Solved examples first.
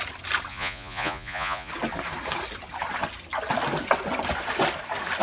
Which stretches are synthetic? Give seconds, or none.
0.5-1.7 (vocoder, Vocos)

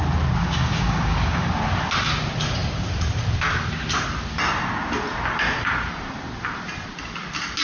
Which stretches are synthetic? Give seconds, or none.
0.4-1.5 (codec, DAC)